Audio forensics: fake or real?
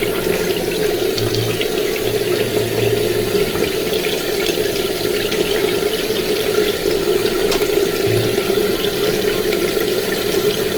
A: real